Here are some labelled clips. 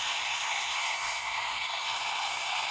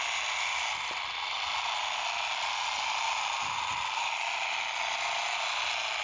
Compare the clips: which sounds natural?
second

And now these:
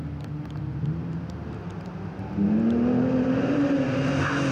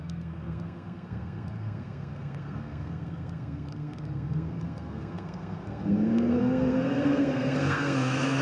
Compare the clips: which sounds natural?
first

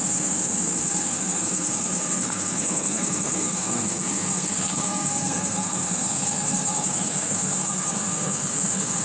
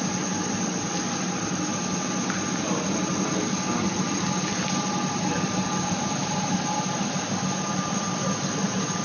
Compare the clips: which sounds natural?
second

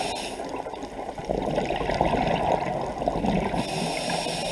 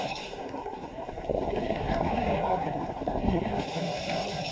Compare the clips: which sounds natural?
first